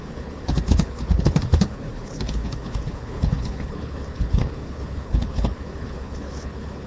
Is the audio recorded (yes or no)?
no